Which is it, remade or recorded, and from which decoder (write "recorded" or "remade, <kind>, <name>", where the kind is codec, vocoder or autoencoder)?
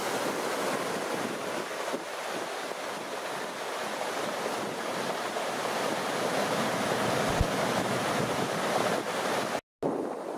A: recorded